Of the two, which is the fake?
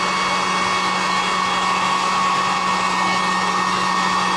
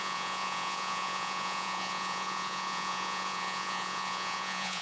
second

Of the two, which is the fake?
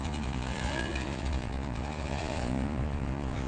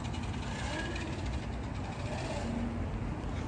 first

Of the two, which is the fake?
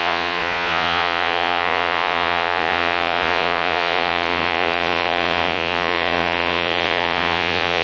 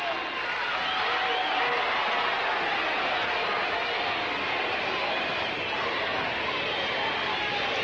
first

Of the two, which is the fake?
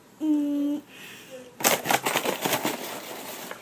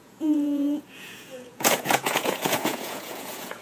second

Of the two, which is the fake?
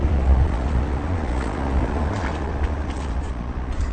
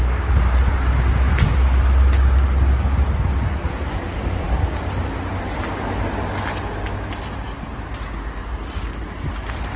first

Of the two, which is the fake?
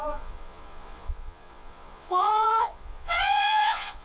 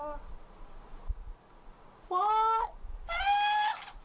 first